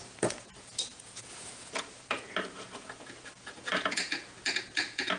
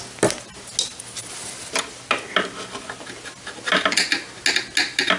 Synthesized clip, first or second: first